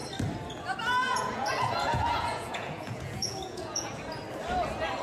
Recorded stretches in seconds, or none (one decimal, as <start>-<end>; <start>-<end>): 0.0-1.0; 4.0-5.0